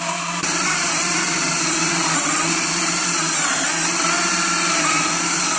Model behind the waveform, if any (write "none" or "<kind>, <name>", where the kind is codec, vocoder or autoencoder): vocoder, BigVGAN v2